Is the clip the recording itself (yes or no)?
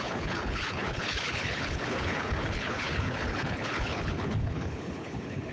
no